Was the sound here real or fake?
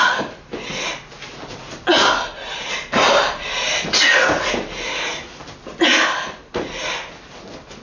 real